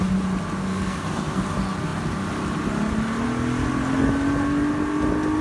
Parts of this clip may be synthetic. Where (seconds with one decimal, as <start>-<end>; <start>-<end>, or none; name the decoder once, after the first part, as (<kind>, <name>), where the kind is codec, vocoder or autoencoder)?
0.6-1.4 (codec, SNAC)